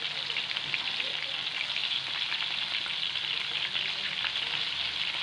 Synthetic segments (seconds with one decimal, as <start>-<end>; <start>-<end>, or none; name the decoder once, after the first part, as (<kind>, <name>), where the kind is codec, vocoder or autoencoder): none